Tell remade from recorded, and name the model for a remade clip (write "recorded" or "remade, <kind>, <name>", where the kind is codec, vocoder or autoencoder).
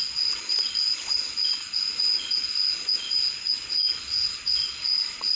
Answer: remade, vocoder, Vocos